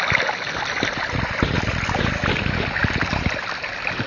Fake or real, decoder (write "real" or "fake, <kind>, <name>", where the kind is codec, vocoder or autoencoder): real